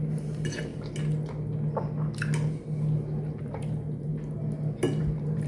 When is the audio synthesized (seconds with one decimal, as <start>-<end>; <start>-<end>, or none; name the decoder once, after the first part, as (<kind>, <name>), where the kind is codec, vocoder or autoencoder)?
0.0-0.7 (vocoder, BigVGAN v2); 3.4-4.1; 5.0-5.5